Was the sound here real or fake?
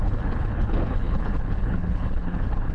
fake